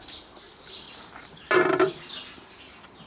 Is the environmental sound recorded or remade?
recorded